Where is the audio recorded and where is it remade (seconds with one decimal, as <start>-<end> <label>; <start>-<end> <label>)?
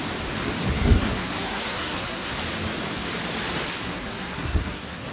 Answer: 0.0-0.7 recorded; 0.7-2.3 remade; 2.3-3.7 recorded; 3.7-5.1 remade